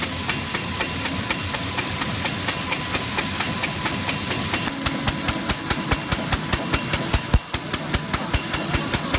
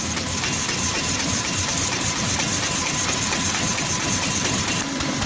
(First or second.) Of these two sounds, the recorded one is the first